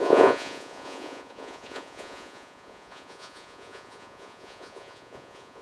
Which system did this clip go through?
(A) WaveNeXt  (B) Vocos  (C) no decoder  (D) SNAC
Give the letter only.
B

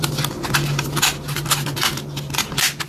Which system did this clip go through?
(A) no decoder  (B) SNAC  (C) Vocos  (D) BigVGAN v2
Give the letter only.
A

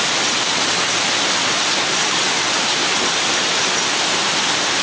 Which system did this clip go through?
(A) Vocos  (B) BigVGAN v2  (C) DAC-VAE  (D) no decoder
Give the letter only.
D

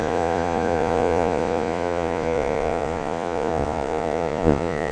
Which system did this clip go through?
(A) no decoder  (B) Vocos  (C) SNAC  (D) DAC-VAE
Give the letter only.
B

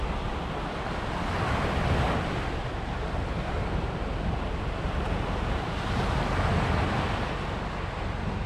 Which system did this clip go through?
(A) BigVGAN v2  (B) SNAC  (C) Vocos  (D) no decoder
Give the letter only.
D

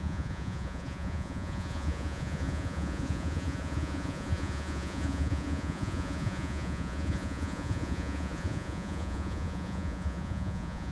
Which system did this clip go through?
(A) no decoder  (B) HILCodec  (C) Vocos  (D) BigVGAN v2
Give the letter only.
C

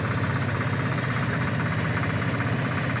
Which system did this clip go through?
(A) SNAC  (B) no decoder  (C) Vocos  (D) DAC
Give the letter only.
B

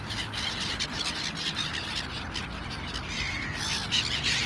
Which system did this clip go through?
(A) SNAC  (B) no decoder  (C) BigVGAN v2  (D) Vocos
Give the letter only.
B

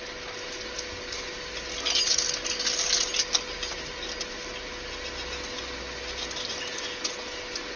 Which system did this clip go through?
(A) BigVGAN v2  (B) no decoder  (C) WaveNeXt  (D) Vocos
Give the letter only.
B